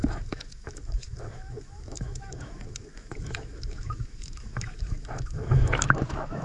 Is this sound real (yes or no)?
no